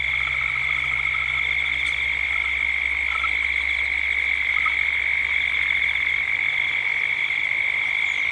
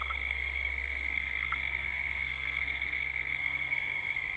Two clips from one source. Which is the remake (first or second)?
second